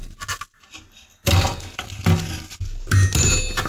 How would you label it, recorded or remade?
recorded